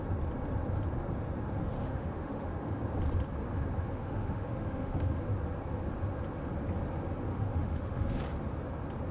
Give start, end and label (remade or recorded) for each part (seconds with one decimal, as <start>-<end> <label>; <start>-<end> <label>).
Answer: 0.0-1.6 recorded; 1.6-2.8 remade; 2.8-4.0 recorded; 4.0-5.2 remade; 5.2-7.3 recorded; 7.3-8.2 remade; 8.2-9.1 recorded